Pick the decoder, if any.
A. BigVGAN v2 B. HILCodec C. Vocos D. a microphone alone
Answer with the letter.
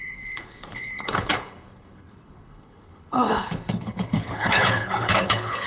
B